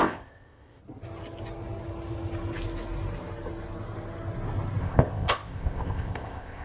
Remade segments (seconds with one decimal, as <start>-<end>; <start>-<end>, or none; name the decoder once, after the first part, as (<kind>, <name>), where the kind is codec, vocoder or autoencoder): 0.0-0.8 (codec, ZipCodec); 4.8-6.6